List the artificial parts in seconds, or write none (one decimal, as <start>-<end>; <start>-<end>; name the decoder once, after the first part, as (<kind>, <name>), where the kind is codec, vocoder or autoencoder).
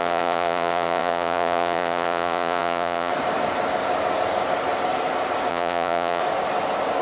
0.0-3.1 (vocoder, Vocos); 5.5-6.2